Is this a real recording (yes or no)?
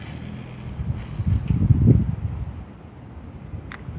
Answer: yes